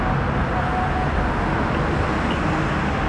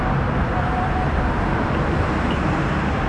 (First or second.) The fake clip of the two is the second